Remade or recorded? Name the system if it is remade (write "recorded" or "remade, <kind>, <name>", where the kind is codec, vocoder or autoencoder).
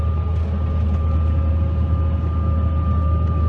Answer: recorded